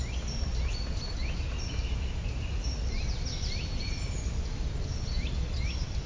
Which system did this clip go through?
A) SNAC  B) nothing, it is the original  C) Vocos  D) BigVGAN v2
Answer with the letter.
B